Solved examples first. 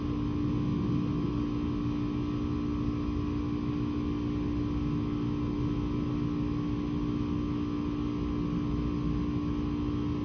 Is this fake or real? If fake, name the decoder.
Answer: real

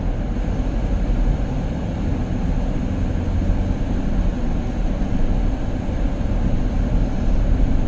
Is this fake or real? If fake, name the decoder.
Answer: real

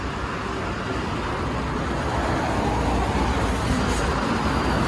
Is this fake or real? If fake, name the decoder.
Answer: real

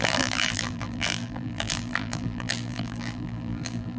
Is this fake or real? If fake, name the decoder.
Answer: fake, vocoder, BigVGAN v2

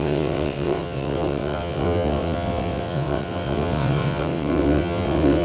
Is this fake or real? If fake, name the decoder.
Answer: fake, vocoder, WaveNeXt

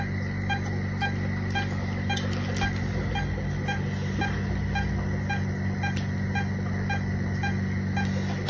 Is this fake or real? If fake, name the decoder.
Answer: real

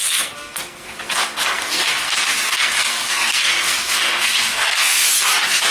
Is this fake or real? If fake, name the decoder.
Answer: fake, codec, SNAC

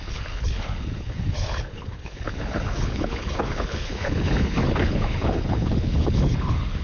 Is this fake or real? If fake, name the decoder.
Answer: fake, codec, HILCodec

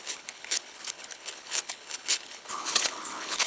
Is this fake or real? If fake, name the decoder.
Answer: fake, codec, HILCodec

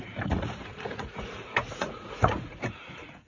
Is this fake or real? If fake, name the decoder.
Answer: fake, vocoder, Vocos